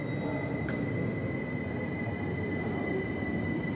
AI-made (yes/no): no